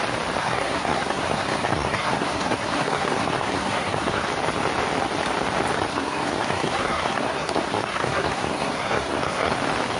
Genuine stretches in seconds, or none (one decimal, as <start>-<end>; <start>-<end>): 0.0-0.4; 4.3-5.9; 9.5-10.0